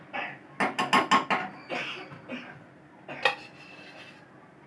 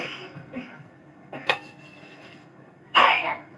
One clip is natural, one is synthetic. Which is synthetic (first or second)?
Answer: second